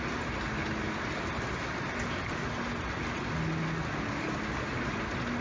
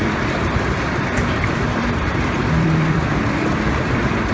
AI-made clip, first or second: second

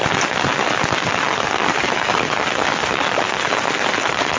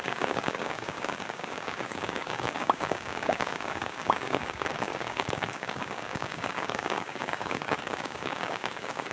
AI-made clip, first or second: second